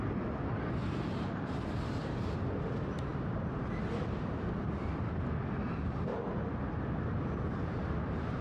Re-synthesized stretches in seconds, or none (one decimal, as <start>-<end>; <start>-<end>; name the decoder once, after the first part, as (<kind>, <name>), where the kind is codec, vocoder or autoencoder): none